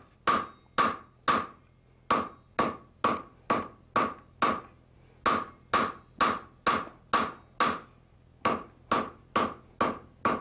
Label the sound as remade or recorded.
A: recorded